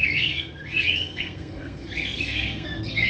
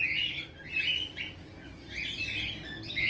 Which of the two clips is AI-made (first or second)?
first